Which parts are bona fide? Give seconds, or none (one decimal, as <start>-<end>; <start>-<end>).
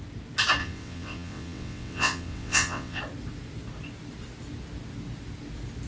0.0-0.6; 3.0-5.9